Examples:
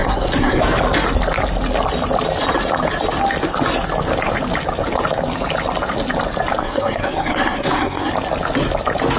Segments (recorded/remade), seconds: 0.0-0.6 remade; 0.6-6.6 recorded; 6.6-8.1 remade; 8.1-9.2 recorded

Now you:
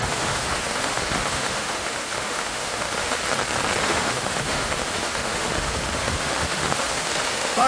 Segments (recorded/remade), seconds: 0.0-3.2 remade; 3.2-3.8 recorded; 3.8-7.7 remade

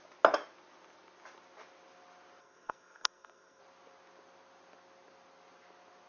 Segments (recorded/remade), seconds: 0.0-2.4 recorded; 2.4-3.6 remade; 3.6-6.1 recorded

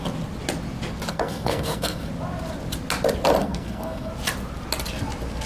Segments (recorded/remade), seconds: 0.0-1.1 recorded; 1.1-2.1 remade; 2.1-3.4 recorded; 3.4-4.1 remade; 4.1-5.5 recorded

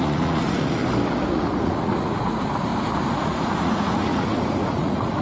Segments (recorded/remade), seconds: 0.0-0.8 remade; 0.8-1.3 recorded; 1.3-2.7 remade; 2.7-3.2 recorded; 3.2-5.2 remade

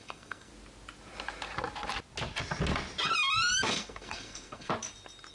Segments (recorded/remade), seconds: 0.0-0.5 remade; 0.5-3.7 recorded; 3.7-4.7 remade; 4.7-5.3 recorded